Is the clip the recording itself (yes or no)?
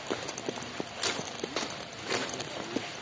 yes